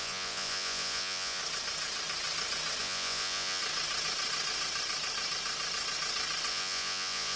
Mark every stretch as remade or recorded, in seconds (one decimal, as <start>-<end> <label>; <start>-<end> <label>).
0.0-1.4 remade; 1.4-2.8 recorded; 2.8-3.6 remade; 3.6-6.5 recorded; 6.5-7.4 remade